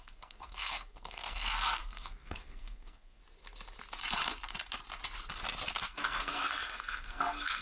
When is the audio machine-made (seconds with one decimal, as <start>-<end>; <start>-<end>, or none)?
0.0-3.2; 5.7-7.6